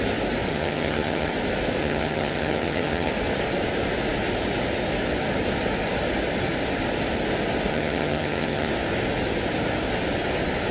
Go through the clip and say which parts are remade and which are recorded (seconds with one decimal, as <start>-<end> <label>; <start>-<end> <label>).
0.0-0.5 recorded; 0.5-1.3 remade; 1.3-1.8 recorded; 1.8-3.1 remade; 3.1-7.7 recorded; 7.7-8.7 remade; 8.7-10.7 recorded